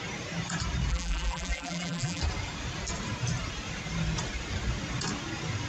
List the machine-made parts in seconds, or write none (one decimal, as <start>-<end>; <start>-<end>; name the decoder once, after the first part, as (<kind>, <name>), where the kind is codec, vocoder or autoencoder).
0.9-2.2 (vocoder, BigVGAN v2)